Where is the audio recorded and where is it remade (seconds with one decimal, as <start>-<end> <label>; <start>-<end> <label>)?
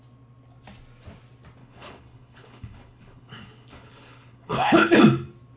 0.0-1.6 recorded; 1.6-5.0 remade; 5.0-5.6 recorded